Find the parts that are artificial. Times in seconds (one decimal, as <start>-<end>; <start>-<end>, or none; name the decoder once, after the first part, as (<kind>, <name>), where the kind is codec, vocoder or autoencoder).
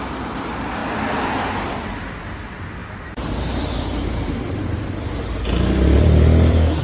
2.8-6.8 (vocoder, BigVGAN v2)